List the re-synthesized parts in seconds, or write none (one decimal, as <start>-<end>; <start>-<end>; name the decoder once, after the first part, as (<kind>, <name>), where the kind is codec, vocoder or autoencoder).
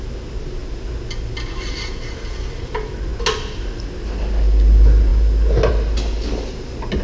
none